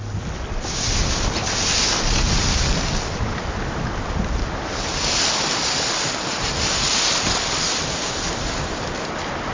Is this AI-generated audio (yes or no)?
no